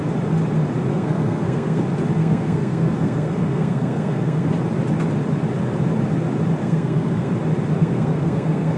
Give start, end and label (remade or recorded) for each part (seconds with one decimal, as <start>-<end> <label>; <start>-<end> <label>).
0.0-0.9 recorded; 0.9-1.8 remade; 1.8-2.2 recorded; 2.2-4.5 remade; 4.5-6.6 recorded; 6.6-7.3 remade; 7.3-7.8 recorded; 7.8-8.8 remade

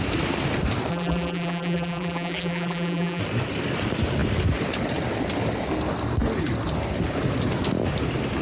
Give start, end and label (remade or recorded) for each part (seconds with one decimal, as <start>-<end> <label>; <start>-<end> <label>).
0.0-0.9 recorded; 0.9-3.2 remade; 3.2-8.4 recorded

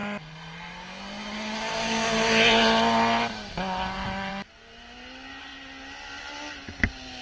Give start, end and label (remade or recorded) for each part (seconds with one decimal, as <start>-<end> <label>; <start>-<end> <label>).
0.0-7.2 recorded